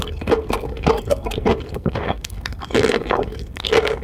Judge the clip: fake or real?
fake